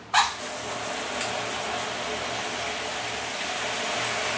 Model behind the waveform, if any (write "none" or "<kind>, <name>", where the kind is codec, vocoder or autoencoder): none